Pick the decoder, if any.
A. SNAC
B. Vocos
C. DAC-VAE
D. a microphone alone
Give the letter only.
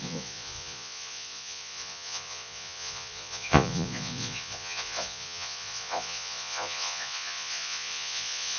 B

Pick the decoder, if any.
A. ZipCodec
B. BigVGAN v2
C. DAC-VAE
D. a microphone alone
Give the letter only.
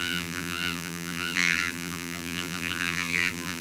B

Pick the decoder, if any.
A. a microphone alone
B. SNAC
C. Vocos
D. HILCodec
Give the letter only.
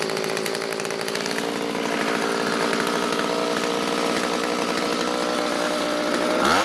A